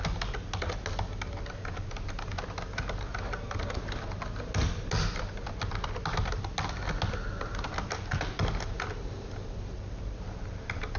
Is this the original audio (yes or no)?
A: yes